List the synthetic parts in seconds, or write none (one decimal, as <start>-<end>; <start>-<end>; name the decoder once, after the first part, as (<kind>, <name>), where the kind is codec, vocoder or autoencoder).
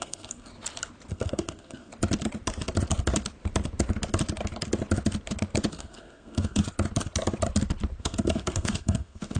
0.0-0.5 (codec, SNAC); 1.1-1.9; 5.7-6.6; 8.0-9.4